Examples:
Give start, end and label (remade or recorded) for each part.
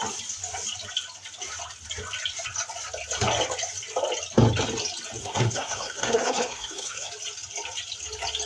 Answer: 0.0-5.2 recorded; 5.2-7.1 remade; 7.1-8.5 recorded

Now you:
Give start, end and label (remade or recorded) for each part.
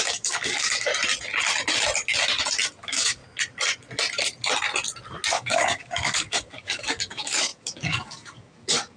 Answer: 0.0-0.9 remade; 0.9-2.8 recorded; 2.8-3.2 remade; 3.2-5.3 recorded; 5.3-9.0 remade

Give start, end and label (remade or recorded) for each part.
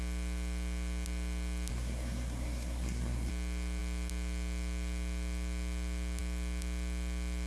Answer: 0.0-1.7 recorded; 1.7-3.3 remade; 3.3-7.5 recorded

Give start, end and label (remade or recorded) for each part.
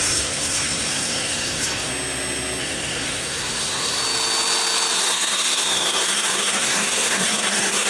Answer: 0.0-1.9 remade; 1.9-2.6 recorded; 2.6-4.0 remade; 4.0-5.0 recorded; 5.0-7.9 remade